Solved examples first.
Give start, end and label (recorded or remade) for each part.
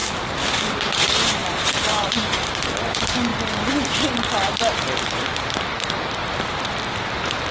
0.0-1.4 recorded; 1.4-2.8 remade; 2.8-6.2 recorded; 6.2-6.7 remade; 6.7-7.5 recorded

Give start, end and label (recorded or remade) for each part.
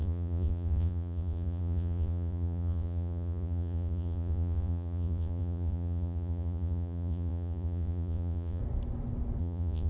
0.0-8.6 remade; 8.6-9.4 recorded; 9.4-9.9 remade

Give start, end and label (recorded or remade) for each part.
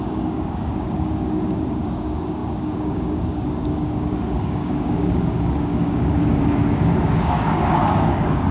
0.0-8.5 remade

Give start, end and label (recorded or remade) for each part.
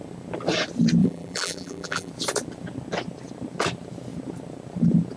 0.0-1.0 recorded; 1.0-2.1 remade; 2.1-5.2 recorded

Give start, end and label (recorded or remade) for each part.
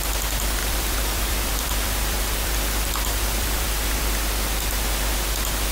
0.0-0.6 recorded; 0.6-4.0 remade; 4.0-5.7 recorded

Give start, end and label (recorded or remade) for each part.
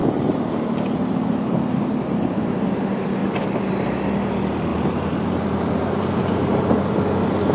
0.0-4.7 recorded; 4.7-6.9 remade; 6.9-7.5 recorded